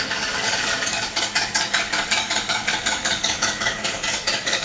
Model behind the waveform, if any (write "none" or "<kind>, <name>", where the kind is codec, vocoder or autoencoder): codec, DAC